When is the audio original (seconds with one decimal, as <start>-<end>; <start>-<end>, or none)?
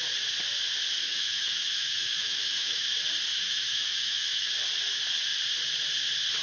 0.0-1.0; 2.9-3.3; 4.5-6.4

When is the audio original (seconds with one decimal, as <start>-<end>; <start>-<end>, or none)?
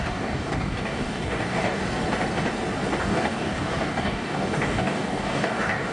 1.8-3.0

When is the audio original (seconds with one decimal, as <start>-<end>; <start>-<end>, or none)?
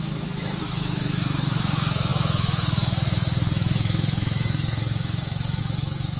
none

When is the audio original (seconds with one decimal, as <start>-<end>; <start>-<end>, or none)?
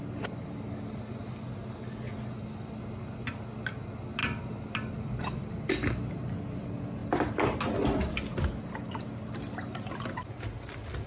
0.0-4.2; 5.6-11.1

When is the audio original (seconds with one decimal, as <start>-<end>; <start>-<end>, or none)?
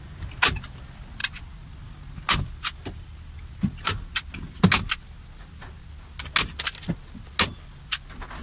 0.0-8.4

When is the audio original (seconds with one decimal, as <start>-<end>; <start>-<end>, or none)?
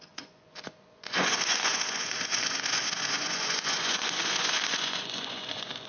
none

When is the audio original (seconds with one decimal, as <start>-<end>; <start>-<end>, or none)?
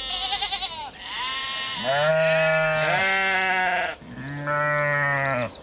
0.0-5.6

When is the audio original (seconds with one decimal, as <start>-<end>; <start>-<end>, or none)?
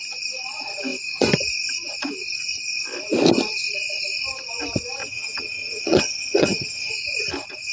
0.0-5.0; 6.9-7.7